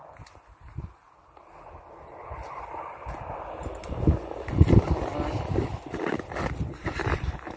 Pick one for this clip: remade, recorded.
recorded